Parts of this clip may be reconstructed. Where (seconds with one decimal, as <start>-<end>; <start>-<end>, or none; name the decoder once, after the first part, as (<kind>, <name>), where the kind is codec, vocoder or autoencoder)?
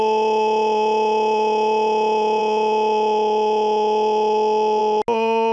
none